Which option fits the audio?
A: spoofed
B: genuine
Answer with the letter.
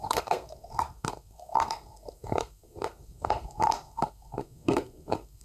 A